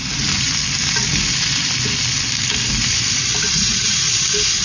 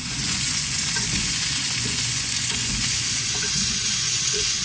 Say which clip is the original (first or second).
first